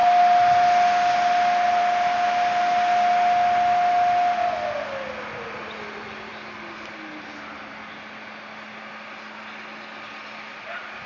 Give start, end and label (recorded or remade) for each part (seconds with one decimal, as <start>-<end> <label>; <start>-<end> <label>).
0.0-11.1 recorded